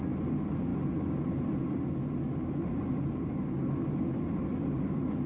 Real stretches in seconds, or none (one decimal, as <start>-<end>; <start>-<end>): 0.0-5.3